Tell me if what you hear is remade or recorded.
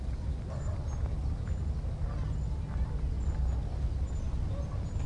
recorded